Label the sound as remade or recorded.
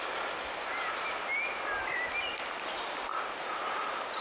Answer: recorded